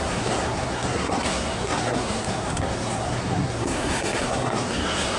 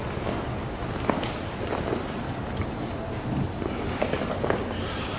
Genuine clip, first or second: second